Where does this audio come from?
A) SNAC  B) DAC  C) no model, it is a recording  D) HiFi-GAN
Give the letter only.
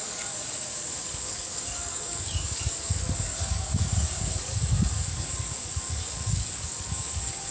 B